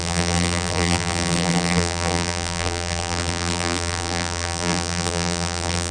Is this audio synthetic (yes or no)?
yes